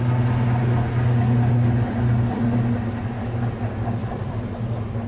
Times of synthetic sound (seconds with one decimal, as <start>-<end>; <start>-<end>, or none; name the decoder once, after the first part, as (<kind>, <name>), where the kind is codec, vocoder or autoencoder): 4.0-4.5 (vocoder, BigVGAN v2)

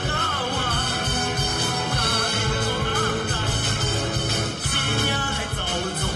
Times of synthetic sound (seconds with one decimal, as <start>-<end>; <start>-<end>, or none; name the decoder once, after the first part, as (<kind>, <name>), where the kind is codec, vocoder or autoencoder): 1.5-4.2 (vocoder, BigVGAN v2)

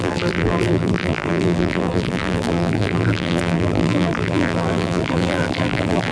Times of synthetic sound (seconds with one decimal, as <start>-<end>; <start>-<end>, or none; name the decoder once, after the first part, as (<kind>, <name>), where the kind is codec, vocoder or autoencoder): 0.0-6.1 (vocoder, BigVGAN v2)

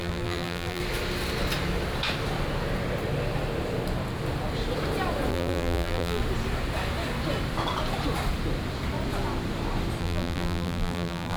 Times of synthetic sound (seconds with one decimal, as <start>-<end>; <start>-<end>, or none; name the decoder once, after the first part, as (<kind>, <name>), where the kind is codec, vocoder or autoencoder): 0.0-0.8 (vocoder, BigVGAN v2); 5.3-6.2; 10.0-11.4

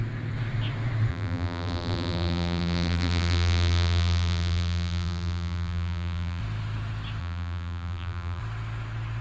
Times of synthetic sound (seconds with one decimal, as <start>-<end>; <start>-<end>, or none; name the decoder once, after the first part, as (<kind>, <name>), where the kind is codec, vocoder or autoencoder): 1.1-6.4 (vocoder, BigVGAN v2); 7.2-8.4

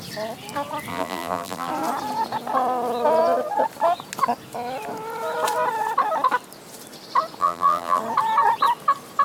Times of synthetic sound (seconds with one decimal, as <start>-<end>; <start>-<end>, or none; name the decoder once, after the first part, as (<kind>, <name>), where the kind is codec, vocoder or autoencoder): 0.9-1.7 (vocoder, BigVGAN v2); 7.4-8.0

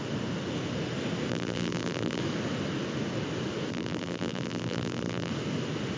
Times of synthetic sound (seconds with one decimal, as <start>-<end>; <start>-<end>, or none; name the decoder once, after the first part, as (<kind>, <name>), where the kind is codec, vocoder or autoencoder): 1.3-2.2 (vocoder, BigVGAN v2); 3.7-5.3

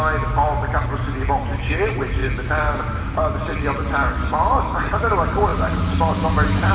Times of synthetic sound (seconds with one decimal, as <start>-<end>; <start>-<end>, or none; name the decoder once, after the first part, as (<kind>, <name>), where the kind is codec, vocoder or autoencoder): none